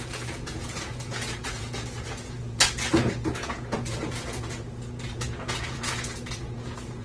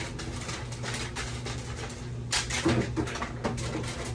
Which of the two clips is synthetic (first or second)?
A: first